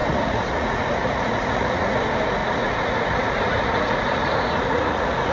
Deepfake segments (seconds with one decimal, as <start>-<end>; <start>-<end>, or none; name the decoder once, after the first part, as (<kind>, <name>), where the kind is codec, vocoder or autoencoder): 0.0-2.0 (vocoder, Vocos); 2.4-5.3